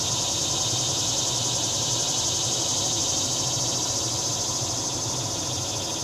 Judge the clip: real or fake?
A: real